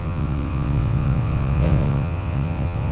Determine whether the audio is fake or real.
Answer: fake